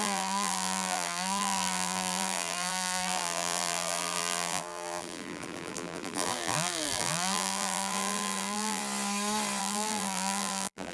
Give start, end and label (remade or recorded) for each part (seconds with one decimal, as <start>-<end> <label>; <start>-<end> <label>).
0.0-8.8 remade; 8.8-9.6 recorded; 9.6-10.9 remade